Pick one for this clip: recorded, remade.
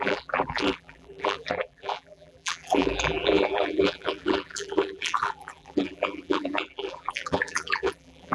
remade